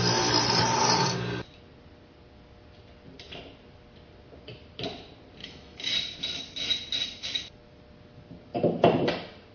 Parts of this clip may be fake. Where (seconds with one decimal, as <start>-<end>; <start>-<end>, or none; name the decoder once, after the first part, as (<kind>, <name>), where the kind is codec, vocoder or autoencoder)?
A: 5.4-5.9 (autoencoder, DAC-VAE)